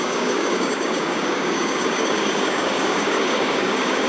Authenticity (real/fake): fake